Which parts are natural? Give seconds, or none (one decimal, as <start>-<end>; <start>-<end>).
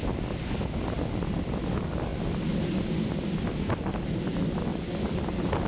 0.0-5.7